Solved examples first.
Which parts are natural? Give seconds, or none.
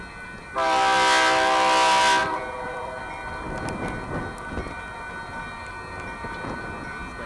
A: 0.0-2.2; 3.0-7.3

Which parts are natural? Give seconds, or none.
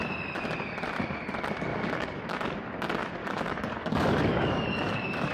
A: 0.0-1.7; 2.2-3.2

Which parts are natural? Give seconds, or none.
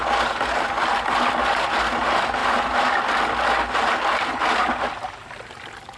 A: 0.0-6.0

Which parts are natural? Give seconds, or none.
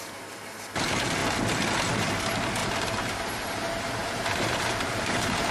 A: 0.0-2.6; 3.2-4.0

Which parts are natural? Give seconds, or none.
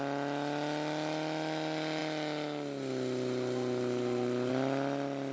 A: 0.0-5.3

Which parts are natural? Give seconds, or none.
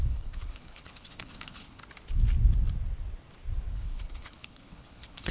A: 1.8-3.7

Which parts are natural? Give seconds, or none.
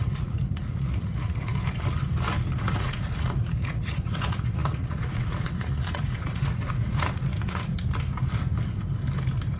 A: 1.5-2.6; 7.7-9.6